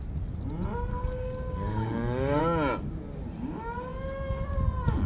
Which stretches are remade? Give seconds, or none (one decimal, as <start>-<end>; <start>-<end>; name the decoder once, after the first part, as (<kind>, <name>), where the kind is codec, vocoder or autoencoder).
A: 0.9-2.4 (codec, DAC)